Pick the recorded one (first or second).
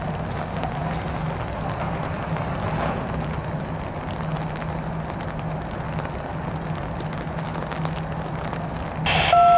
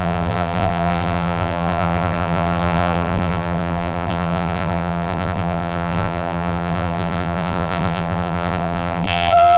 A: first